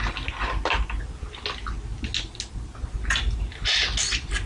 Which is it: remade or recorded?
recorded